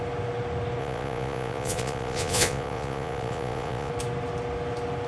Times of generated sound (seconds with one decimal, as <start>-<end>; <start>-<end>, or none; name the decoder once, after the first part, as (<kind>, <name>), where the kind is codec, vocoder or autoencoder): 0.8-3.9 (vocoder, Vocos)